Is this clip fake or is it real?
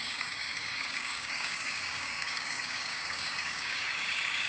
fake